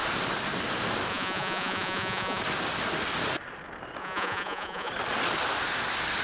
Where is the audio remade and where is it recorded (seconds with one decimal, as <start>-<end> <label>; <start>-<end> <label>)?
0.0-1.1 recorded; 1.1-2.4 remade; 2.4-4.0 recorded; 4.0-4.9 remade; 4.9-6.2 recorded